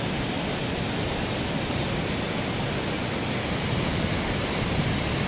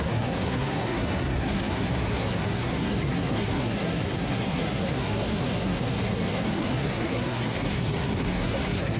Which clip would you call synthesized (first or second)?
second